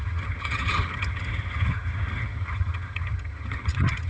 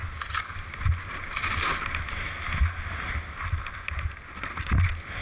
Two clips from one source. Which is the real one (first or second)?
second